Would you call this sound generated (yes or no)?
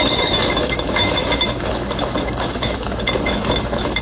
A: yes